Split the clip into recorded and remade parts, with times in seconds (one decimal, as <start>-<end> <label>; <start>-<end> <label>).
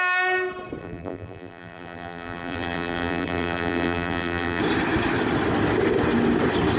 0.0-0.8 recorded; 0.8-4.6 remade; 4.6-6.8 recorded